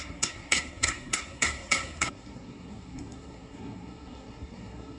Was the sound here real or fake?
fake